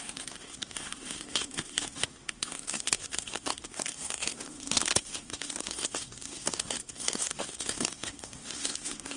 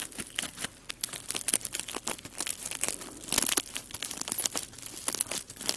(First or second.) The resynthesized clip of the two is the first